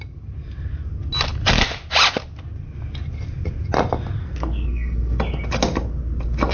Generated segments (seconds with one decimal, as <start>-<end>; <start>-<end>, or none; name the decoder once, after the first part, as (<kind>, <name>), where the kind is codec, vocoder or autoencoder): 4.2-5.2 (codec, SNAC)